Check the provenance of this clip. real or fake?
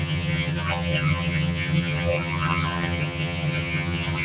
fake